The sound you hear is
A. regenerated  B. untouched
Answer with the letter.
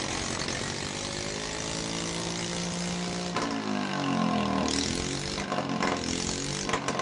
B